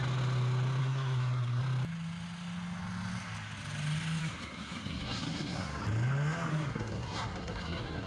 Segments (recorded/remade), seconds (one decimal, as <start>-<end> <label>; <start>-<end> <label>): 0.0-0.8 recorded; 0.8-1.6 remade; 1.6-4.2 recorded; 4.2-5.8 remade; 5.8-6.5 recorded; 6.5-8.1 remade